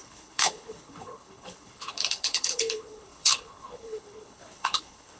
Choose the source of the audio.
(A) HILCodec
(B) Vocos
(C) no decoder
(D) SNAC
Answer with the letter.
A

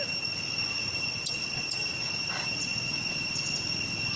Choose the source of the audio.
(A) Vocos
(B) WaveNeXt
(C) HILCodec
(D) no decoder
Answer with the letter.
D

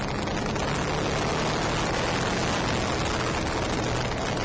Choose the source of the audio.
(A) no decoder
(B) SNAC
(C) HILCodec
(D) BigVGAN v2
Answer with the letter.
A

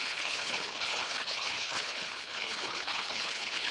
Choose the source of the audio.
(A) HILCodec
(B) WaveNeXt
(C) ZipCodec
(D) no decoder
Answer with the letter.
A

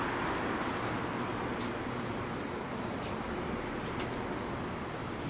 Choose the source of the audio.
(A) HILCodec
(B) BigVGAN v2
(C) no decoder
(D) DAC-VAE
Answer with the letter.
C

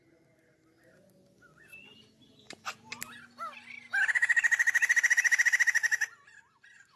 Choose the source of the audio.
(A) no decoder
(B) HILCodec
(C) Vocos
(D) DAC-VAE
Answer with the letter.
A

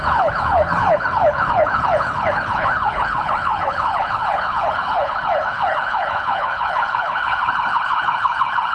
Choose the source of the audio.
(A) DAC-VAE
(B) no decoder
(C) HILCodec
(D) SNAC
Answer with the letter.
C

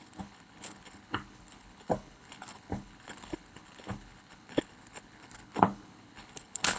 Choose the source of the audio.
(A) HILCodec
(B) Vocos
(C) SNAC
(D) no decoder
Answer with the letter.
A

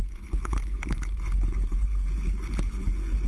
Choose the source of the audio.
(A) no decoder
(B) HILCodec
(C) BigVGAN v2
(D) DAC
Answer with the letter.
B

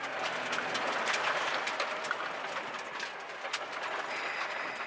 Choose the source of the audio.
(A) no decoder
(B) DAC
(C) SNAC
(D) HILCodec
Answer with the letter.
A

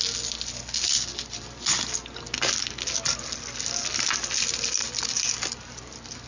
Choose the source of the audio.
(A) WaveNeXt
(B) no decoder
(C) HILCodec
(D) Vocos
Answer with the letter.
B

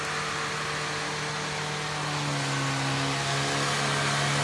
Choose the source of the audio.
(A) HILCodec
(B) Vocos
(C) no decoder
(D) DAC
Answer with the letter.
C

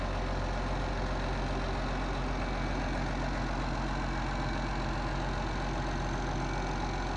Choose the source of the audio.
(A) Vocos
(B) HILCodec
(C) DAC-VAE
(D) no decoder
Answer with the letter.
D